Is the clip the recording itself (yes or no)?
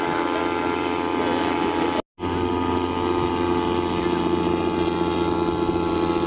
yes